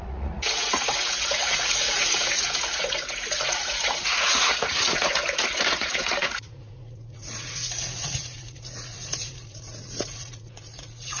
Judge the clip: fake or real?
fake